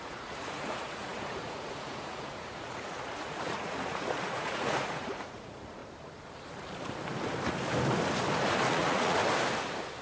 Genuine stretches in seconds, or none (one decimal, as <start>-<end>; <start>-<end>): 5.8-8.7; 9.2-10.0